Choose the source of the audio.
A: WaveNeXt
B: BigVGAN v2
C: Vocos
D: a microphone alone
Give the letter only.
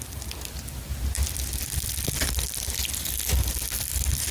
D